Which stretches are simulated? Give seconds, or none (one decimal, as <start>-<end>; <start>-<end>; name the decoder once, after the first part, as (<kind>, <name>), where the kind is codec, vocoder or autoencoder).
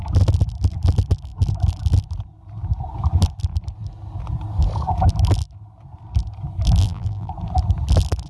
6.8-7.3 (vocoder, BigVGAN v2)